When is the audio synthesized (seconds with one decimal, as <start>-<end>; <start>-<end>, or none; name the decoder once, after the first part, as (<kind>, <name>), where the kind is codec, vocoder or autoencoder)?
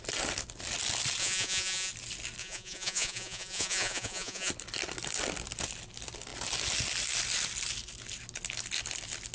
1.2-1.9 (vocoder, Vocos); 2.4-4.5